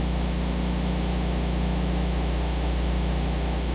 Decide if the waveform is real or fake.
fake